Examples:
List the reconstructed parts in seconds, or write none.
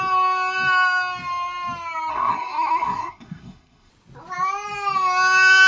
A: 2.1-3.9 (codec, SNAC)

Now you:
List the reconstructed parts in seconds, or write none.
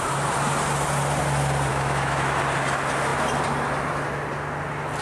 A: 1.7-2.4 (autoencoder, DAC-VAE)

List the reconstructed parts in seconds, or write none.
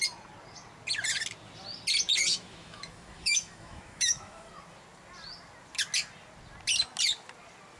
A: 2.3-4.5 (autoencoder, DAC-VAE)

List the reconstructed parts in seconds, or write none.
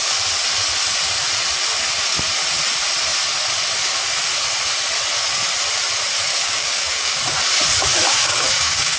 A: 6.3-7.2 (codec, DAC); 8.1-9.0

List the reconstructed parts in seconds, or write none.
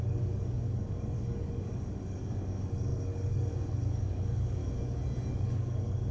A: 0.0-4.6 (codec, DAC); 5.3-6.1